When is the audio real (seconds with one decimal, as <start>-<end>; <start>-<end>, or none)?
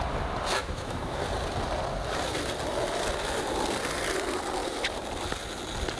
0.0-0.6; 1.2-6.0